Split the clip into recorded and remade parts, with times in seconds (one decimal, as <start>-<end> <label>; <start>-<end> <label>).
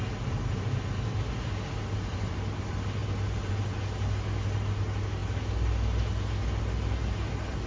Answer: 0.0-7.7 recorded